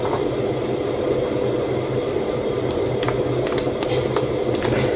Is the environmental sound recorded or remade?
recorded